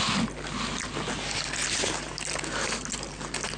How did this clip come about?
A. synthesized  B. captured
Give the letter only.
B